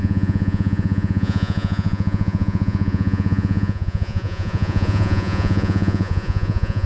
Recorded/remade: remade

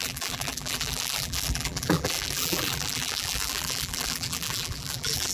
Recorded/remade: remade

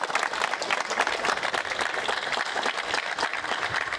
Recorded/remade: recorded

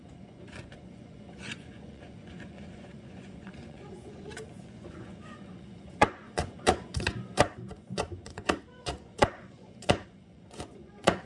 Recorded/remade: remade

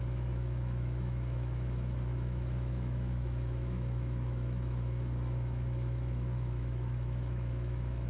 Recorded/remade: remade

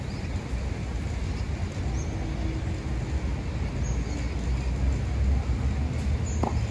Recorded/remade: recorded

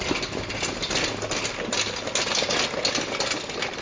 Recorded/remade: recorded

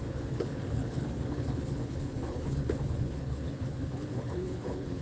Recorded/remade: remade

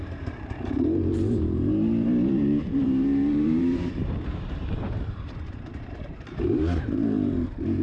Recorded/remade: remade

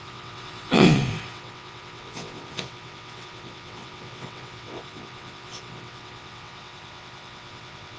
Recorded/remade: remade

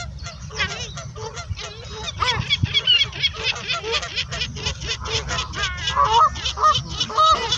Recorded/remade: recorded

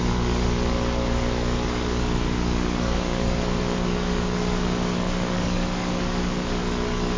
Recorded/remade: remade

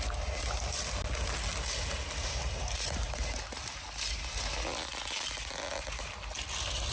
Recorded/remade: recorded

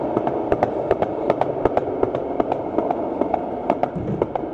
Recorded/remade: recorded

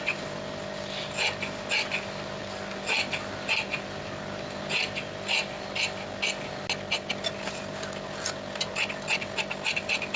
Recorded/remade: recorded